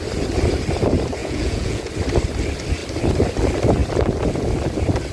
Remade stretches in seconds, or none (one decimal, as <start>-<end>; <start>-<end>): 1.2-1.9